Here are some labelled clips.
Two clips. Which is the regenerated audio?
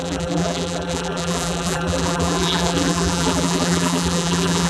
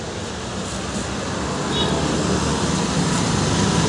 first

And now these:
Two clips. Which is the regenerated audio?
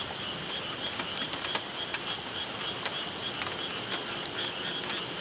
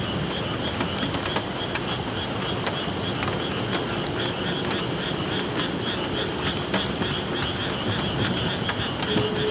first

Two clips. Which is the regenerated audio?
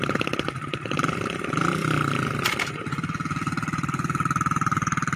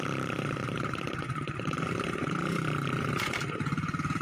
second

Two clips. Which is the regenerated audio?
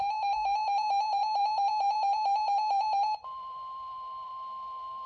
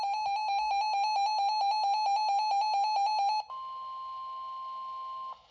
first